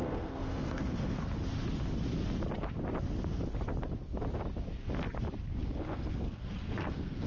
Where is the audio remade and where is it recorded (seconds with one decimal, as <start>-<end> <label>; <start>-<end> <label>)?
0.0-1.2 remade; 1.2-5.6 recorded; 5.6-7.3 remade